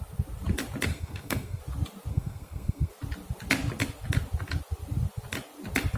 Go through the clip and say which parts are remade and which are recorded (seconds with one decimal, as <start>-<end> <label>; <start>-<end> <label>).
0.0-0.9 recorded; 0.9-1.6 remade; 1.6-2.1 recorded; 2.1-2.9 remade; 2.9-6.0 recorded